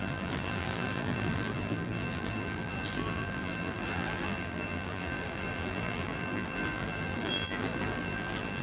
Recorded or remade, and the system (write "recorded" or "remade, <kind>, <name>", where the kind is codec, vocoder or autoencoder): remade, vocoder, BigVGAN v2